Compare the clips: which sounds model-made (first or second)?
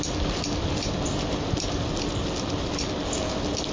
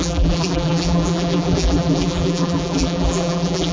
second